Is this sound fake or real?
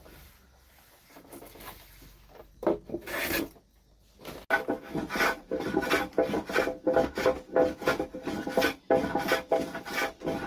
real